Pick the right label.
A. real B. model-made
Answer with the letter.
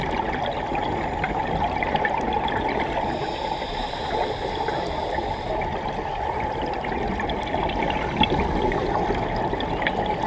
A